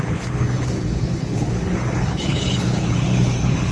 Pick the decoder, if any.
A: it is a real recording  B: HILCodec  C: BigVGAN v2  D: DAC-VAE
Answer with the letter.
B